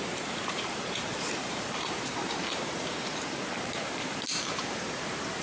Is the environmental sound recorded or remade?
remade